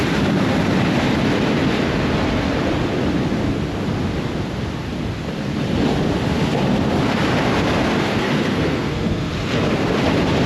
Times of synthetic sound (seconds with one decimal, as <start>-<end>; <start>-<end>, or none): 8.1-9.3